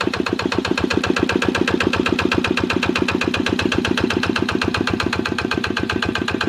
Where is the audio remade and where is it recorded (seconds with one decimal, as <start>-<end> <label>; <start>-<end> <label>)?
0.0-0.9 remade; 0.9-3.4 recorded; 3.4-6.5 remade